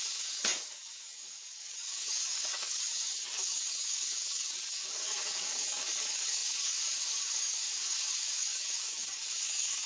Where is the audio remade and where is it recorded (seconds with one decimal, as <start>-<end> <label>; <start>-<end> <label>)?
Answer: 0.0-9.9 remade